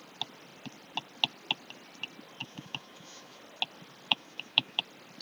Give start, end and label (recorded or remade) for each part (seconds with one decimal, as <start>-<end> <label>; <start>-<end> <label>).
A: 0.0-2.4 recorded; 2.4-3.4 remade; 3.4-4.1 recorded; 4.1-4.8 remade; 4.8-5.2 recorded